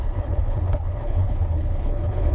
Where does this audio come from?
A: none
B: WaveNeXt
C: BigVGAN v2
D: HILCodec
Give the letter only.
D